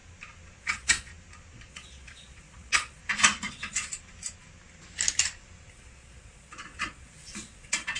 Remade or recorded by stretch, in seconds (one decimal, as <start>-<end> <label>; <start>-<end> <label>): 0.0-0.6 recorded; 0.6-1.1 remade; 1.1-1.7 recorded; 1.7-3.0 remade; 3.0-3.5 recorded; 3.5-3.9 remade; 3.9-5.7 recorded; 5.7-8.0 remade